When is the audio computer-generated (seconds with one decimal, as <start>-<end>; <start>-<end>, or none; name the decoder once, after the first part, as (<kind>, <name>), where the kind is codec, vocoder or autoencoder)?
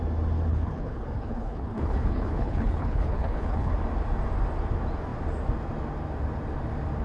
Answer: 0.5-3.7 (codec, HILCodec)